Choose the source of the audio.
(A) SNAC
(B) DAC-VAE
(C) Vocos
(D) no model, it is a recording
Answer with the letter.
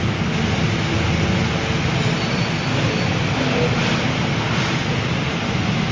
D